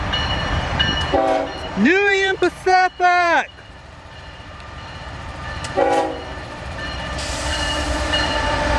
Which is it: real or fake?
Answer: fake